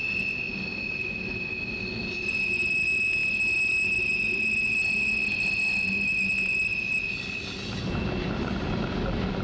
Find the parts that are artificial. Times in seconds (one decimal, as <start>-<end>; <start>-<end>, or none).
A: none